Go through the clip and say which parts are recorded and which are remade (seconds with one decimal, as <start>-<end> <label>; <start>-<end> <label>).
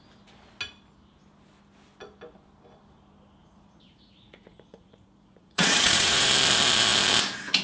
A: 0.0-3.4 recorded; 3.4-6.3 remade; 6.3-7.6 recorded